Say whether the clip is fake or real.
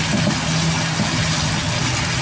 real